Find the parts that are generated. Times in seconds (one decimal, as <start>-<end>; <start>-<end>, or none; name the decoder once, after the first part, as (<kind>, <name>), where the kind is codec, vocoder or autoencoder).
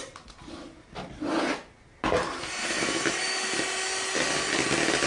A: 2.6-3.5 (autoencoder, DAC-VAE)